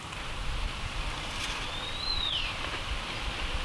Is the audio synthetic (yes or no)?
no